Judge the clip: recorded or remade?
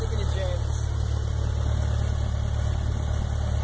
recorded